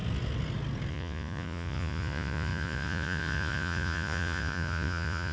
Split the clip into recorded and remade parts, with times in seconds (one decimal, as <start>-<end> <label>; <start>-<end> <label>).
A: 0.0-0.9 recorded; 0.9-5.3 remade